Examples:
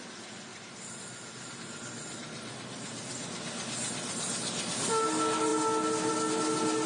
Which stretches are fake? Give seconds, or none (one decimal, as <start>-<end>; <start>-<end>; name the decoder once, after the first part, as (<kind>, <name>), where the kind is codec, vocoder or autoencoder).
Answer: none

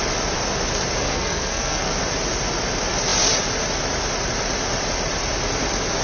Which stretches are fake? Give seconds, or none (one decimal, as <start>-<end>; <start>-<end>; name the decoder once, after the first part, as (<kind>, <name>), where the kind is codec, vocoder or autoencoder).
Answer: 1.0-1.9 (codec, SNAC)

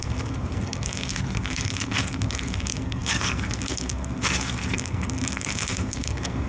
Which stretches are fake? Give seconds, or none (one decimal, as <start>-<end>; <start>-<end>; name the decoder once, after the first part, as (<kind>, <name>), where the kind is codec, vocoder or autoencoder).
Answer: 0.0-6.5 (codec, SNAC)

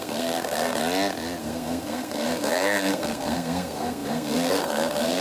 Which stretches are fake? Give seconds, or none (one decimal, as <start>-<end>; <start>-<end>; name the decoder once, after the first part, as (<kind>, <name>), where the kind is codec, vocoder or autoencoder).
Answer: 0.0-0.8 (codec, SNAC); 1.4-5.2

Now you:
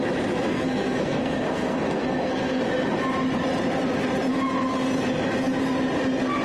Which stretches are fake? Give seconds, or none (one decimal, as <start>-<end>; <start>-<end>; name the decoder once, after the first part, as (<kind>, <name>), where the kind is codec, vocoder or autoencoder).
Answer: 0.5-2.6 (codec, SNAC)